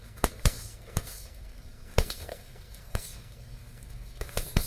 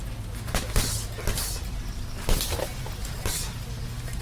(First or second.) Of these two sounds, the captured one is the second